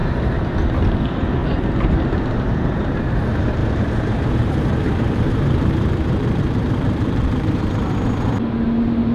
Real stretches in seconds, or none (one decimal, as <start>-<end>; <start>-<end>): 0.0-1.4; 1.9-3.6; 7.5-9.1